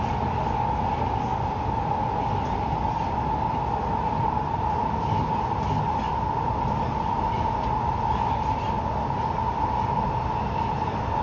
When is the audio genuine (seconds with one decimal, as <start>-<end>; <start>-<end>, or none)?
0.0-11.2